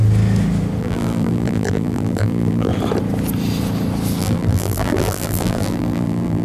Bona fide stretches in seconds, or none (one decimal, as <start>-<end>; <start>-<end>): 0.0-0.8; 2.7-4.2